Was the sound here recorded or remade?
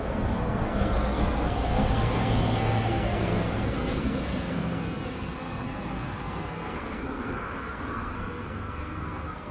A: remade